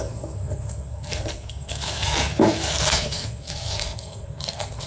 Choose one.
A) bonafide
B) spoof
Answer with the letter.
B